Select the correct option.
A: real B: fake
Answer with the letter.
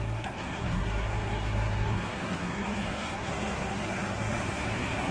B